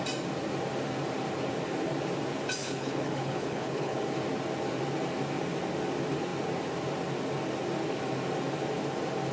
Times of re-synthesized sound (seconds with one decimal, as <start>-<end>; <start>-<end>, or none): 2.6-4.0